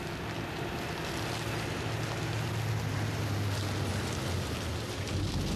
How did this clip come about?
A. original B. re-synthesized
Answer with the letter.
A